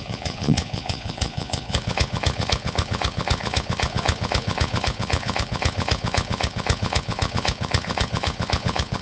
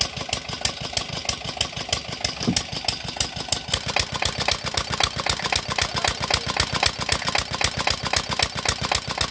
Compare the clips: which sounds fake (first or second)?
first